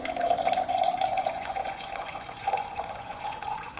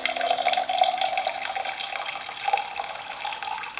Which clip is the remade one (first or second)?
first